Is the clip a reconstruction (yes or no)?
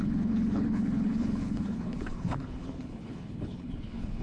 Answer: yes